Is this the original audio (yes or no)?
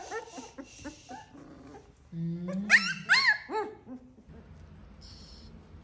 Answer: yes